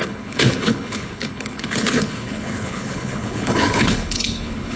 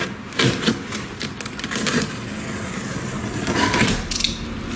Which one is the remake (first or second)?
first